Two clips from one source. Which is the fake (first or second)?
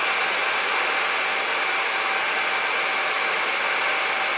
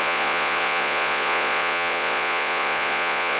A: second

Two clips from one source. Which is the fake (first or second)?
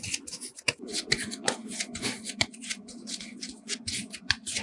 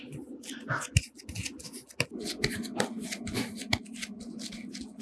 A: first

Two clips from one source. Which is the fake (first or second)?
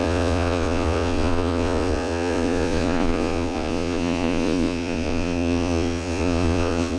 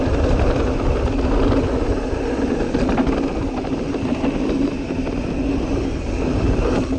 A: first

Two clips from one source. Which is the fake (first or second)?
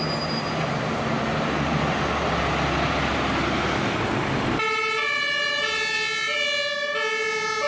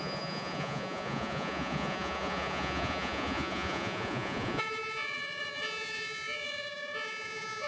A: second